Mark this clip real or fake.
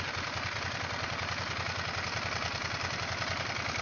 real